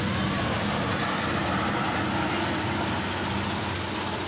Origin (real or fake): real